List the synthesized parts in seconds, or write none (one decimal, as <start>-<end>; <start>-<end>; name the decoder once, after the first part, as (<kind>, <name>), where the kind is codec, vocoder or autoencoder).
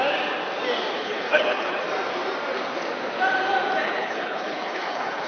0.9-1.8 (codec, HILCodec); 3.8-5.3